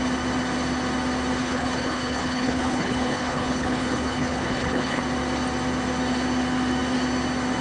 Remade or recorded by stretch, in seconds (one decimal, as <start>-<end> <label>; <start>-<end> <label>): 0.0-1.4 recorded; 1.4-5.0 remade; 5.0-7.6 recorded